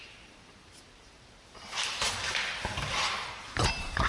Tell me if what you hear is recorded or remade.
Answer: remade